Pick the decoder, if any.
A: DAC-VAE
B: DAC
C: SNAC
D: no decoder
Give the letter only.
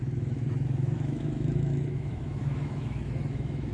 A